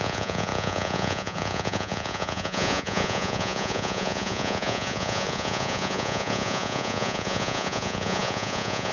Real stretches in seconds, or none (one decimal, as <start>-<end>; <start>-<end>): none